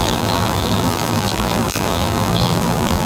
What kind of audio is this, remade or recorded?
remade